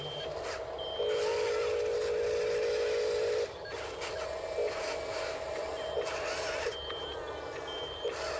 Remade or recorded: recorded